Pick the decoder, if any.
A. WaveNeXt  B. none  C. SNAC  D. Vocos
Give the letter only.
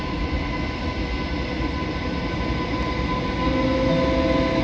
B